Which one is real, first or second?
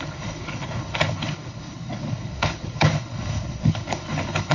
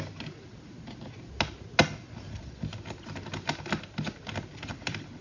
second